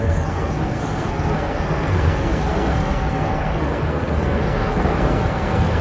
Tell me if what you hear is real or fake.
fake